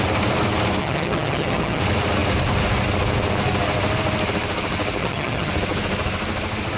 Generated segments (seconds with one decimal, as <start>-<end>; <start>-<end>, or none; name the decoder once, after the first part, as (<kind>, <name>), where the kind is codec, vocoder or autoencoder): 0.8-1.8 (vocoder, HiFi-GAN); 5.0-5.5